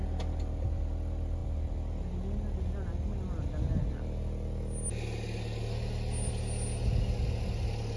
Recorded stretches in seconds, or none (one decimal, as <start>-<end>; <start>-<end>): 0.0-8.0